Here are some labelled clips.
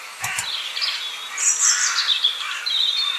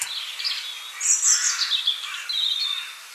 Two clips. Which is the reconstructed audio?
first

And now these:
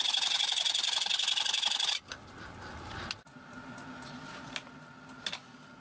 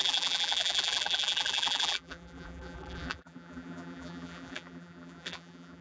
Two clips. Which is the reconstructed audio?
second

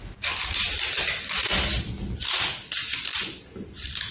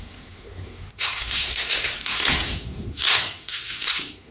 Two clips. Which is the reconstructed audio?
second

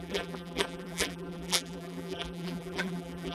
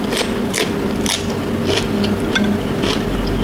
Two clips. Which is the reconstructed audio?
first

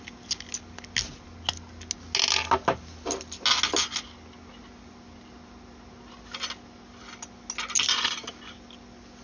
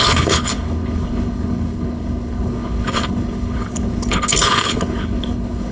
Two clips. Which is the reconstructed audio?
second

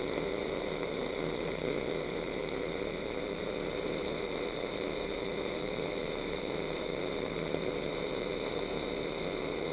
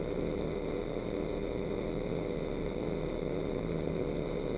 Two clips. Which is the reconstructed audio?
first